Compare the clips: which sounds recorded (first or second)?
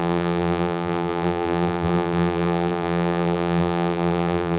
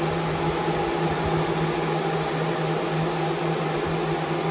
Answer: second